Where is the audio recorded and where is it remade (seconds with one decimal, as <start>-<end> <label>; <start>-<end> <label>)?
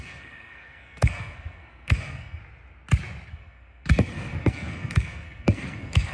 0.0-2.4 remade; 2.4-3.3 recorded; 3.3-6.1 remade